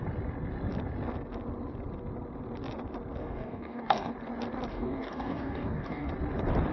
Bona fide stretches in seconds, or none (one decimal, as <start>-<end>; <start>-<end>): 0.0-3.2; 4.1-4.7; 6.1-6.7